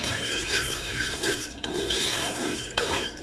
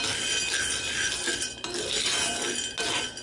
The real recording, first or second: second